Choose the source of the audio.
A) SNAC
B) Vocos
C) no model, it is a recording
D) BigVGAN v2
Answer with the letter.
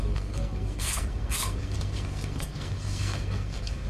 A